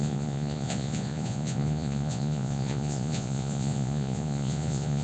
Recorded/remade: remade